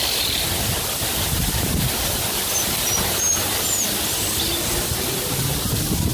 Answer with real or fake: real